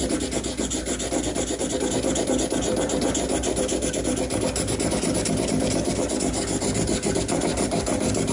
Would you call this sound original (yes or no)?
yes